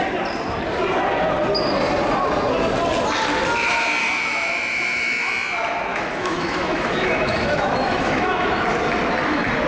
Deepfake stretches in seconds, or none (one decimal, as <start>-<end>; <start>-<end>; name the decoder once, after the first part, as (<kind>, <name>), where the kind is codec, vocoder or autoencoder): 4.0-5.3 (autoencoder, DAC-VAE); 5.9-8.5